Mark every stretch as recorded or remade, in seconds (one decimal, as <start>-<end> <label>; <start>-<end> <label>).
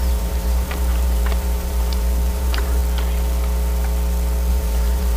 0.0-2.8 remade; 2.8-4.5 recorded; 4.5-5.2 remade